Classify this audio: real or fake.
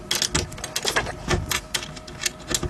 real